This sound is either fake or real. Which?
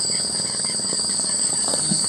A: fake